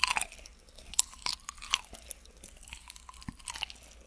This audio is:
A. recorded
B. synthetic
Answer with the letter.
A